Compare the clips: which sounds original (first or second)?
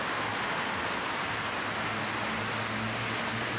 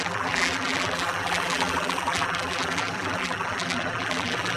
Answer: first